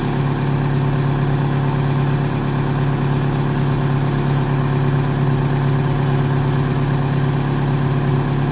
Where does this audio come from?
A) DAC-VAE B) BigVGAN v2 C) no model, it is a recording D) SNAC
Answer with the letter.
C